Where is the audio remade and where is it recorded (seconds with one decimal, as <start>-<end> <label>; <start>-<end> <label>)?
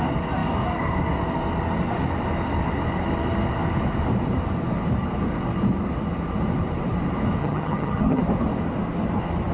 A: 0.0-7.4 recorded; 7.4-8.2 remade; 8.2-9.5 recorded